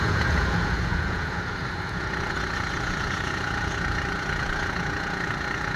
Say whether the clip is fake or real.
fake